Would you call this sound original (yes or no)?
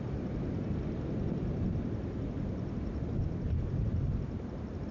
yes